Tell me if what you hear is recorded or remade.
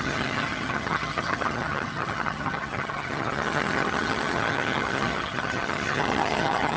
remade